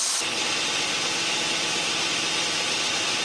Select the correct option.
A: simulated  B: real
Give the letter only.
B